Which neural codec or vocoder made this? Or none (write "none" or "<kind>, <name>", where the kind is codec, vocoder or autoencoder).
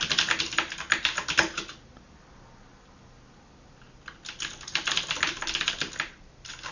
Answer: none